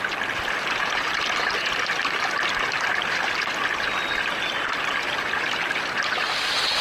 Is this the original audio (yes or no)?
yes